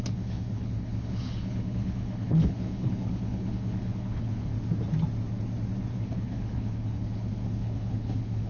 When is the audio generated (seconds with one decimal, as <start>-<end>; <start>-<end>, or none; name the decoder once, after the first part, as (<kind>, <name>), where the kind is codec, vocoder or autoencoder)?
0.0-4.5 (codec, HILCodec); 5.9-8.5